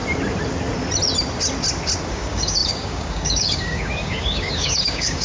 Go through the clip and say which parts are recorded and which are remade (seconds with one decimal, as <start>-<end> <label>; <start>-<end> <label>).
0.0-2.1 recorded; 2.1-5.2 remade